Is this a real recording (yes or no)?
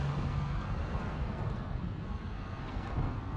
no